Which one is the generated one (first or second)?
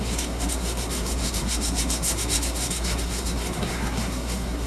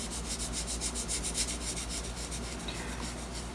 first